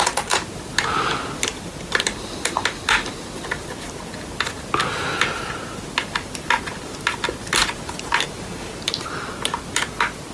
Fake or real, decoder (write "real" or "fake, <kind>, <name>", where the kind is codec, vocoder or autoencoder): real